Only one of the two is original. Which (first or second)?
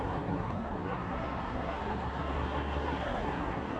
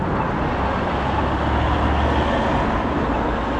second